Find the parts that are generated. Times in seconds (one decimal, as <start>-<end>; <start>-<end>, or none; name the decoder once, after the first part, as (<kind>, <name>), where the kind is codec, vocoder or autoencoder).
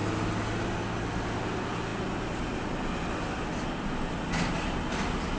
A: none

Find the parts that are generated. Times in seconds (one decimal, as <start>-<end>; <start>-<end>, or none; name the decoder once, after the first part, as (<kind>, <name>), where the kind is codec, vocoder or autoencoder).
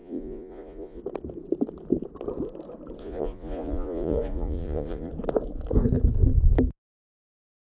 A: 0.0-1.0 (vocoder, Vocos); 3.0-5.1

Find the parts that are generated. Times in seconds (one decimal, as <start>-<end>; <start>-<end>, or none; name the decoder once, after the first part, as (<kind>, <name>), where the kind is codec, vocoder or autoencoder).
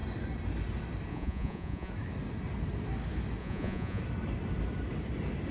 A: 1.1-1.9 (vocoder, Vocos); 3.4-4.0